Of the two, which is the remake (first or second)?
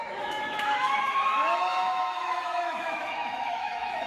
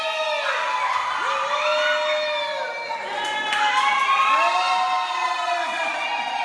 first